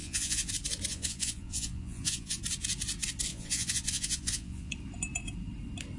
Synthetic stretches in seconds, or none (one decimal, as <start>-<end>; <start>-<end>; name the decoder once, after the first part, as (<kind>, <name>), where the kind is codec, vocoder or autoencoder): 0.0-0.5 (vocoder, Vocos); 0.9-2.4; 3.3-4.7